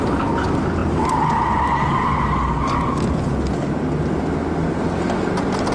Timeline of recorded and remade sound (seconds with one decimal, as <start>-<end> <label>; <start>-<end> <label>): 0.0-0.8 recorded; 0.8-2.3 remade; 2.3-5.7 recorded